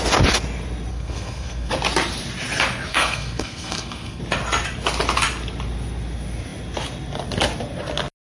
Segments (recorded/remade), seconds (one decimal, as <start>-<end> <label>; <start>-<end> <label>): 0.0-0.9 recorded; 0.9-1.7 remade; 1.7-2.9 recorded; 2.9-4.2 remade; 4.2-8.2 recorded